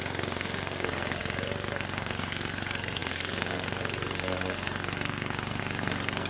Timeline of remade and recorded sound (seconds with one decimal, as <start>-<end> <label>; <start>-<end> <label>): 0.0-6.3 remade